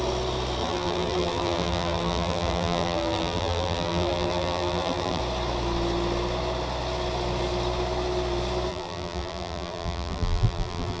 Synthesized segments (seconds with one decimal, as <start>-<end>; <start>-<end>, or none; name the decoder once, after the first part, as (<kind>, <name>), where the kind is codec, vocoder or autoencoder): 0.6-5.2 (vocoder, BigVGAN v2); 8.7-11.0